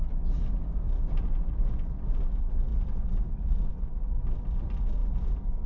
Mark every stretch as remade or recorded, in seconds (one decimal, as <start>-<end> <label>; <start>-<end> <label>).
0.0-5.0 recorded; 5.0-5.7 remade

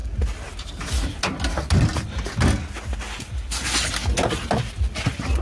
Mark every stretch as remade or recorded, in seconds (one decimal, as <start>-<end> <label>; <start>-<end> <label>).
0.0-5.4 recorded

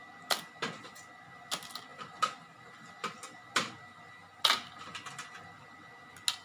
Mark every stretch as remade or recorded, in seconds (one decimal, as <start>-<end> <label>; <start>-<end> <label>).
0.0-6.4 recorded

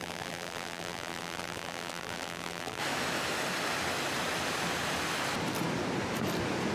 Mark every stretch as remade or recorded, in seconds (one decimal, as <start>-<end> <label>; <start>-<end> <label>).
0.0-2.8 remade; 2.8-6.7 recorded

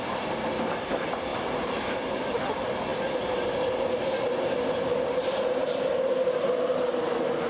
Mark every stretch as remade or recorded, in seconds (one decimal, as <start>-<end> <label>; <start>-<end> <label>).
0.0-5.6 recorded; 5.6-6.8 remade; 6.8-7.5 recorded

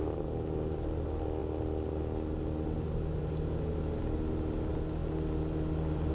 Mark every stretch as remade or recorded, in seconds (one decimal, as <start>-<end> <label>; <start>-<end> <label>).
0.0-6.1 recorded

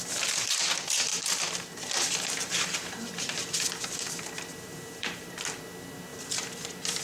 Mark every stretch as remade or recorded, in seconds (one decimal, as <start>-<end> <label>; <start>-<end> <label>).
0.0-1.1 recorded; 1.1-5.3 remade; 5.3-7.0 recorded